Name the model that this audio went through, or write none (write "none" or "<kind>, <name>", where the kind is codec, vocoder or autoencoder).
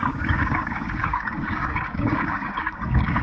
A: codec, DAC